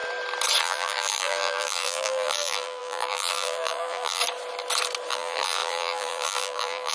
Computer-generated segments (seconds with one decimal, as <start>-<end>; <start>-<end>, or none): 0.6-4.2; 5.1-6.9